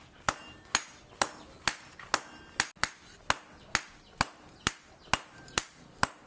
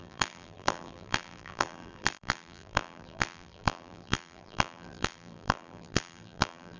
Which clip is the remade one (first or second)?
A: second